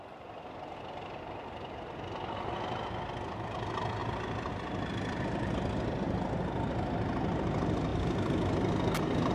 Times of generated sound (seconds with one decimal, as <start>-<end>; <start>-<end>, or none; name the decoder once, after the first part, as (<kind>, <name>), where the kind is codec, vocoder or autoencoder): none